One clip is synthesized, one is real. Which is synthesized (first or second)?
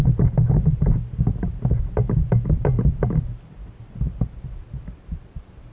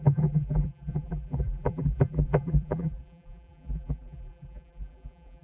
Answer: second